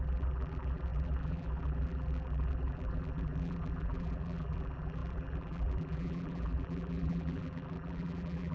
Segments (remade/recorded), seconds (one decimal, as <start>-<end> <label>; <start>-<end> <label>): 0.0-8.5 remade